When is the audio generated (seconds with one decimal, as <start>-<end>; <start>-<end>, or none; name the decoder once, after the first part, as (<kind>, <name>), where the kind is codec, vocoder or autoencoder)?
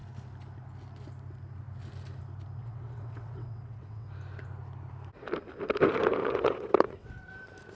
2.6-4.1 (vocoder, WaveNeXt); 6.2-7.1